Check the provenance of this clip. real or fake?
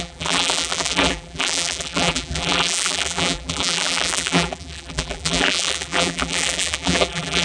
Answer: fake